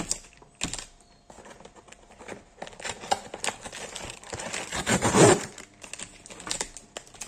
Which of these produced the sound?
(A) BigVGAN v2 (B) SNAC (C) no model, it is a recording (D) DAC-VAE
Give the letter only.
C